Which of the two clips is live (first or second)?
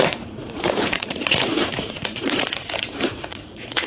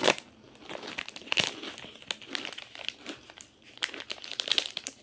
second